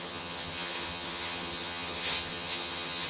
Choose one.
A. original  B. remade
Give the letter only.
B